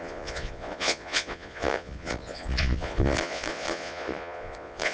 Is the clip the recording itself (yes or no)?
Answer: no